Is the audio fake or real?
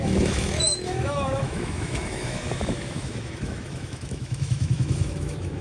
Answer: fake